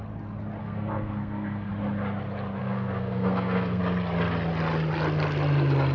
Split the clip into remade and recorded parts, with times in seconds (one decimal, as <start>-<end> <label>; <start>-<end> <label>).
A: 0.0-0.6 recorded; 0.6-1.7 remade; 1.7-2.6 recorded; 2.6-3.8 remade; 3.8-5.9 recorded